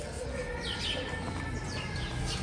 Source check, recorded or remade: recorded